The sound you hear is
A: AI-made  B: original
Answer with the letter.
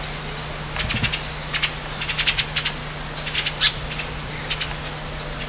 B